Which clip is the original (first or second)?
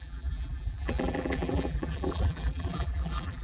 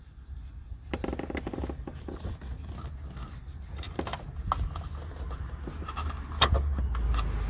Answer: second